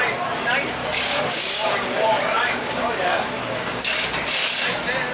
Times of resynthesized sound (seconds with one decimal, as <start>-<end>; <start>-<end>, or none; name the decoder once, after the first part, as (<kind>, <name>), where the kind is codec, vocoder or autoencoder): 0.8-3.8 (codec, DAC)